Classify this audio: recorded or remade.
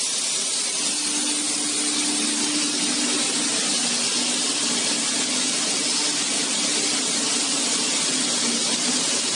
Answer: recorded